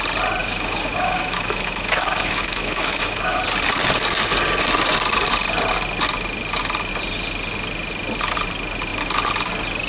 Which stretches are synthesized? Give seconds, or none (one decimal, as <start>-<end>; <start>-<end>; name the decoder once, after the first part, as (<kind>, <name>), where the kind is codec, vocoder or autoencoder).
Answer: 0.4-3.4 (autoencoder, DAC-VAE)